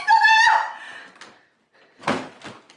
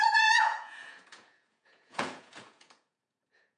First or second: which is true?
first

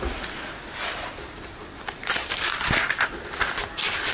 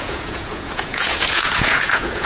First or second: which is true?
first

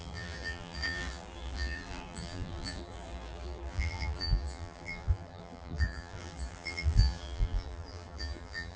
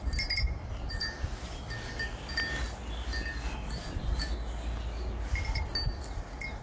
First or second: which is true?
second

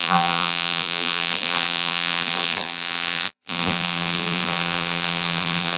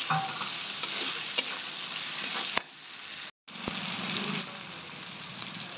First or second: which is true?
second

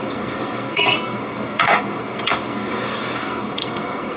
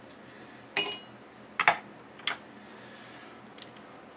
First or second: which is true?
second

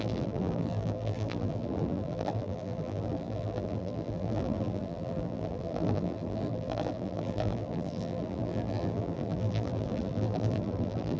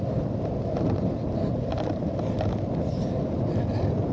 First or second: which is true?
second